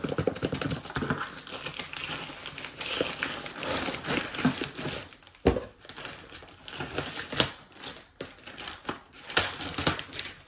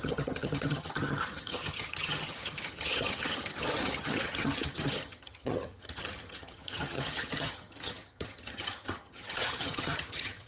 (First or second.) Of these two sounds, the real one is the first